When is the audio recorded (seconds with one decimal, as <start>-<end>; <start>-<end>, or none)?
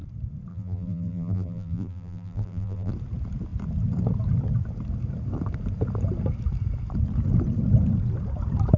0.0-0.5; 2.9-8.8